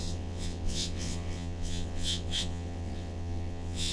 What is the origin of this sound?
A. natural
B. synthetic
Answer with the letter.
B